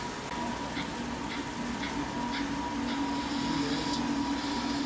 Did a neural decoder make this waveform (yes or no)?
no